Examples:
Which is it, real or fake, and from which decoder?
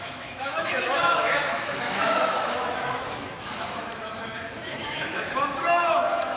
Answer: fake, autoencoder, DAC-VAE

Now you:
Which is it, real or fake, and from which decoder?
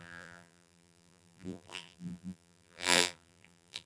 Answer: fake, vocoder, BigVGAN v2